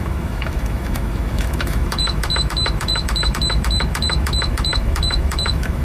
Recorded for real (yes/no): no